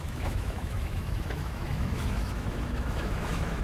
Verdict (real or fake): fake